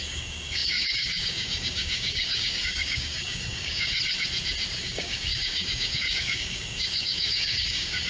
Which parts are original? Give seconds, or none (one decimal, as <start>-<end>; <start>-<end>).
3.9-4.8